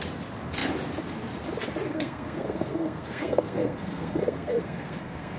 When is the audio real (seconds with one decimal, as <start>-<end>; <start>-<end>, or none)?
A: 0.0-1.9